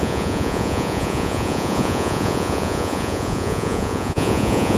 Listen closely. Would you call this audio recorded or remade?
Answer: remade